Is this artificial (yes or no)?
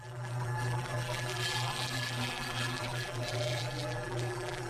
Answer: yes